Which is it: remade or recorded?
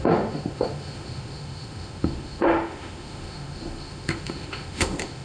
remade